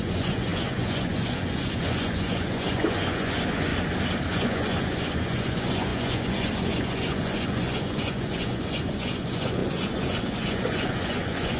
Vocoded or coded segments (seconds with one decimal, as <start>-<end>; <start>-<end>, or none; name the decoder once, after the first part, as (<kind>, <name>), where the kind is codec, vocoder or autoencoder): 0.0-3.7 (vocoder, Vocos); 4.3-11.6